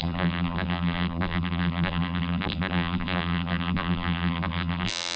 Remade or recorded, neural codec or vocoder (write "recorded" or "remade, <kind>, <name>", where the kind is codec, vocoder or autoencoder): remade, vocoder, BigVGAN v2